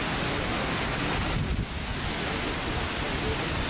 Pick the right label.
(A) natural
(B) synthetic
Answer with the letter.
A